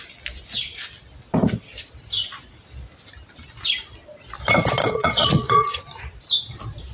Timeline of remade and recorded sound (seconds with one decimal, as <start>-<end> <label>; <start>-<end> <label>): 0.0-4.8 recorded; 4.8-5.8 remade; 5.8-6.9 recorded